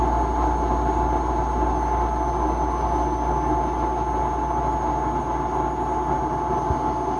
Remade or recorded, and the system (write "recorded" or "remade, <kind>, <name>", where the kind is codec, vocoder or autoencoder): recorded